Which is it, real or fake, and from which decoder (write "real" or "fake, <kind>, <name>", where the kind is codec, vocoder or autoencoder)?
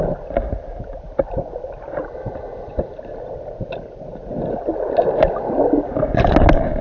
real